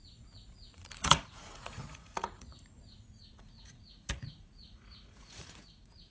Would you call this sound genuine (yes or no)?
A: no